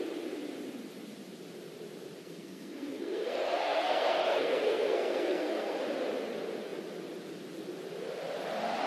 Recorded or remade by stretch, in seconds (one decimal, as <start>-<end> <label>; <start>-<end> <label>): 0.0-2.2 recorded; 2.2-5.8 remade; 5.8-8.9 recorded

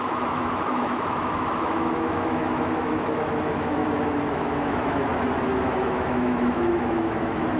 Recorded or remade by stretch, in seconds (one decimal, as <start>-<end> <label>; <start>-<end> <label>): 0.0-3.8 remade; 3.8-4.3 recorded; 4.3-5.1 remade; 5.1-5.6 recorded; 5.6-7.6 remade

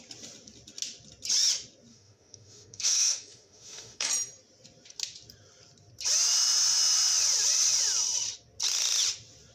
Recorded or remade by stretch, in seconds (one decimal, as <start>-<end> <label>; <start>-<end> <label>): 0.0-1.9 recorded; 1.9-4.1 remade; 4.1-9.5 recorded

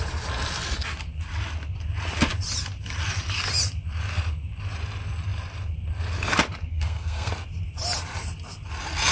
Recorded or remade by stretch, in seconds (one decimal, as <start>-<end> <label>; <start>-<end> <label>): 0.0-6.7 recorded; 6.7-7.3 remade; 7.3-9.1 recorded

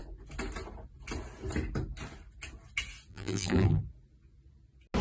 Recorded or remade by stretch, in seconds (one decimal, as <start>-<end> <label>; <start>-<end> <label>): 0.0-3.1 recorded; 3.1-3.8 remade; 3.8-5.0 recorded

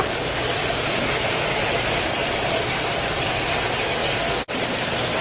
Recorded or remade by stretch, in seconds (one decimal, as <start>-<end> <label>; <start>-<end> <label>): 0.0-2.2 recorded; 2.2-3.2 remade; 3.2-5.2 recorded

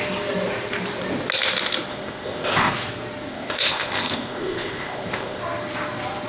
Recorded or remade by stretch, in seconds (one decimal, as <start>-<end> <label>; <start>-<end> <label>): 0.0-1.9 recorded; 1.9-2.7 remade; 2.7-3.3 recorded; 3.3-5.4 remade; 5.4-6.3 recorded